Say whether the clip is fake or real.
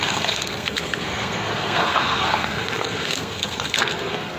fake